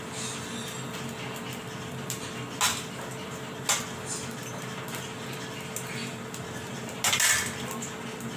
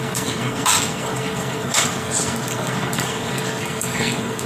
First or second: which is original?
first